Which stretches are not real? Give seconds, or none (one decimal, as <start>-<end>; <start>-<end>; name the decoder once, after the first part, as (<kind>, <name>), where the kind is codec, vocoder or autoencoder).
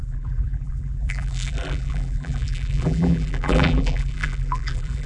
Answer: 0.0-5.1 (vocoder, BigVGAN v2)